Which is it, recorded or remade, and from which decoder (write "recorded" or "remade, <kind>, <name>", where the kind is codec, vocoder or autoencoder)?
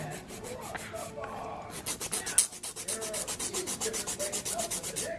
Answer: recorded